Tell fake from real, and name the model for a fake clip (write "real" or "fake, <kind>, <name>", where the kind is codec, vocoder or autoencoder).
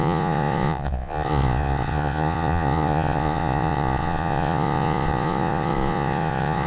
fake, vocoder, Vocos